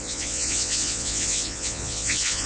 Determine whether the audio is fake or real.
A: fake